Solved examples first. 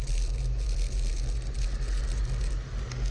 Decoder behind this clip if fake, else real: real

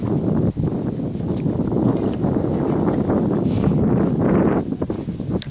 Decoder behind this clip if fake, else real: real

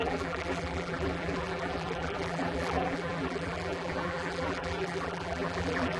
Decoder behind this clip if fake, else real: fake, vocoder, BigVGAN v2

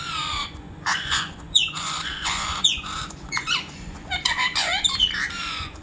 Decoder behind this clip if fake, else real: fake, vocoder, Vocos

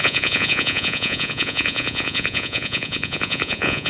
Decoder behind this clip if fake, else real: fake, vocoder, Vocos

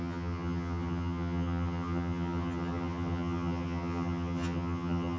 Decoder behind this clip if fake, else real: fake, vocoder, HiFi-GAN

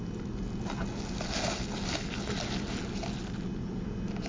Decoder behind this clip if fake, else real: real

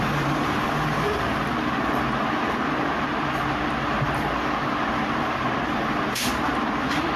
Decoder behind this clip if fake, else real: fake, vocoder, BigVGAN v2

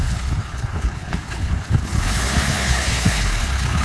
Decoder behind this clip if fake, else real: fake, codec, HILCodec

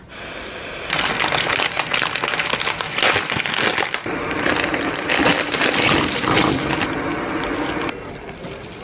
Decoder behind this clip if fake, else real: real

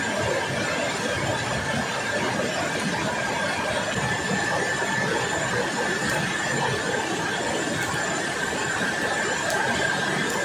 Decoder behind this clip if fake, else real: real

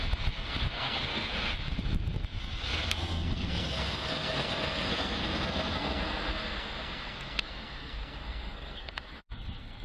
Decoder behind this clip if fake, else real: fake, codec, SNAC